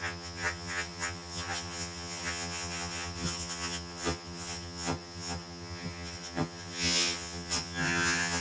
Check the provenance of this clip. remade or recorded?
remade